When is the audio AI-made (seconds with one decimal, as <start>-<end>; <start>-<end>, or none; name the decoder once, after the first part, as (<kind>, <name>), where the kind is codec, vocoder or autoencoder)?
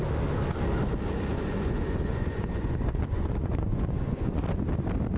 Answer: 1.3-4.4 (vocoder, Vocos)